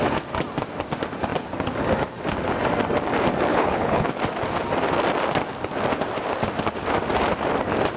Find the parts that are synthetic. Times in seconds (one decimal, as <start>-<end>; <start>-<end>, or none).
3.5-4.1